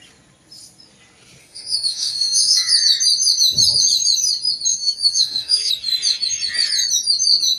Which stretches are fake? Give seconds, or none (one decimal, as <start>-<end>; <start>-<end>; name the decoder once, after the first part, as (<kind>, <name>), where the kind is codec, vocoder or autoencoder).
1.4-2.7 (autoencoder, DAC-VAE); 4.7-5.7